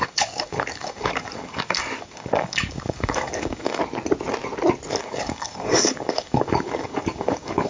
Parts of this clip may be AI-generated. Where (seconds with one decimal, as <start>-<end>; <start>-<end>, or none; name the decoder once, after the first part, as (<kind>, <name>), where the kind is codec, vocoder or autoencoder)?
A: 0.0-3.8 (codec, DAC); 5.0-7.7